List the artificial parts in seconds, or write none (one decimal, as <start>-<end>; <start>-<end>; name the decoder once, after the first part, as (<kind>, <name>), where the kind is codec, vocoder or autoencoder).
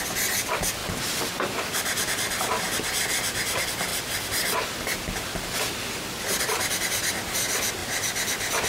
none